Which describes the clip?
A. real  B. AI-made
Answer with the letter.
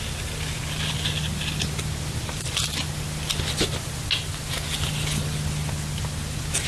A